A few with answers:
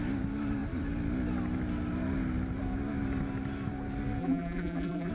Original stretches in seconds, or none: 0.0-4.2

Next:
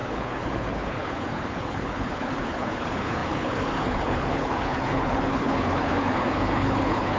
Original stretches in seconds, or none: none

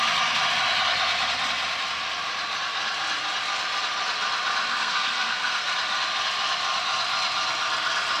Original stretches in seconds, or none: 0.0-4.7; 5.7-8.2

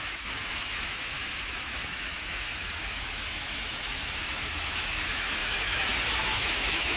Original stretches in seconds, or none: none

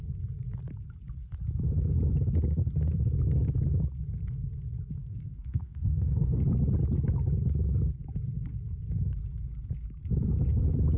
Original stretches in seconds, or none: 0.0-5.0; 6.4-11.0